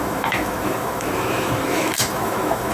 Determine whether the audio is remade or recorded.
remade